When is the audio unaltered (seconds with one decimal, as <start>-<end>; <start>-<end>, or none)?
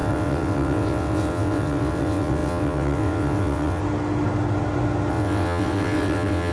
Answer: 3.8-5.1